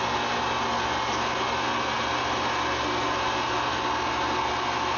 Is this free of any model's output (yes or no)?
yes